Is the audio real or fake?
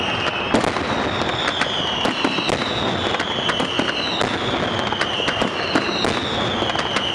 real